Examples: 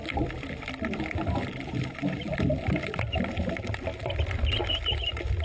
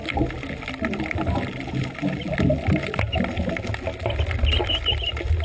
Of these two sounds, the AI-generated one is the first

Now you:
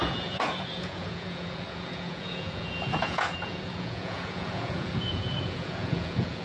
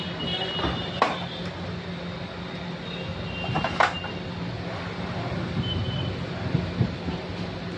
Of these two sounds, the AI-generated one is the first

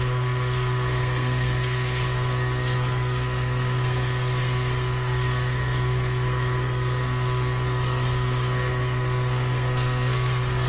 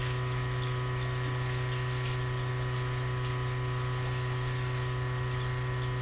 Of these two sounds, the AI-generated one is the first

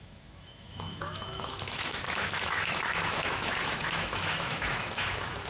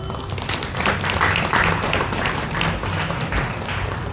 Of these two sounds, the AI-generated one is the first